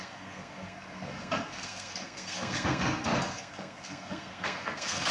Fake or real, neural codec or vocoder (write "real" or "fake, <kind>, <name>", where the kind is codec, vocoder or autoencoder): fake, codec, SNAC